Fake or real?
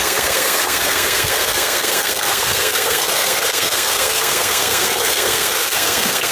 fake